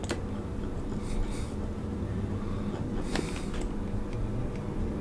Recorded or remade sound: recorded